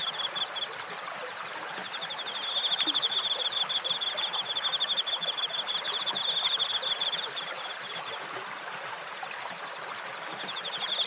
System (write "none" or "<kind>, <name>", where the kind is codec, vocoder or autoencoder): none